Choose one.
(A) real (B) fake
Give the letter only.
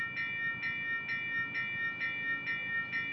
A